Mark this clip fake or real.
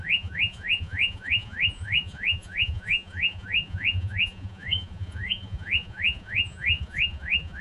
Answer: fake